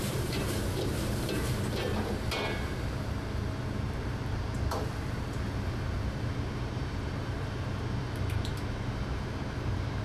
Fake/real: fake